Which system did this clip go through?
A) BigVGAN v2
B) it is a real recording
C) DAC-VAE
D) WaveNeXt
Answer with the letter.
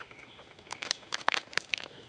C